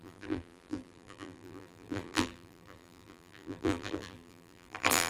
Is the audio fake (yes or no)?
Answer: yes